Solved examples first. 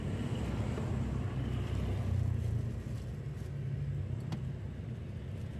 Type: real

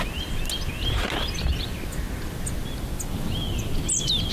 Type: real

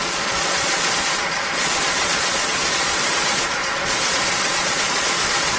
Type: fake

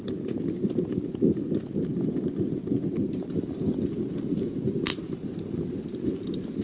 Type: real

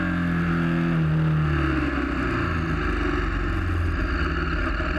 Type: real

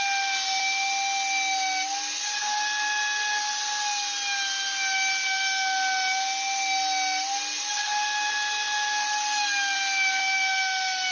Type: real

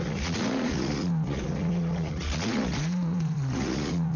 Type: fake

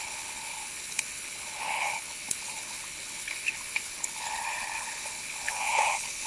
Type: fake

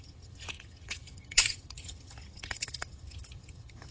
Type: fake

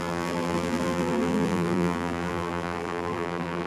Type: fake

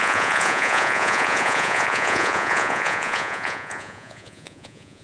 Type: fake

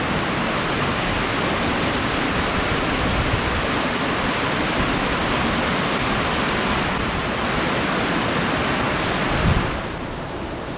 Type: real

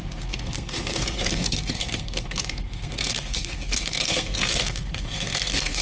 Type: fake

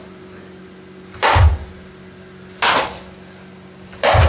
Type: real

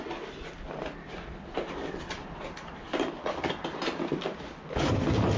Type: real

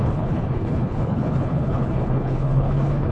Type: fake